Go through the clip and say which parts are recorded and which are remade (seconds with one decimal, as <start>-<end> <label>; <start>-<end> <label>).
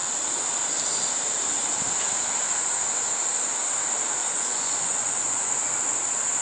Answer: 0.0-4.2 recorded; 4.2-5.5 remade; 5.5-6.4 recorded